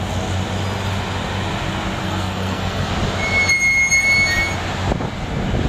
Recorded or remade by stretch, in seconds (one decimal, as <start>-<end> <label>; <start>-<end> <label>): 0.0-2.0 recorded; 2.0-2.9 remade; 2.9-5.7 recorded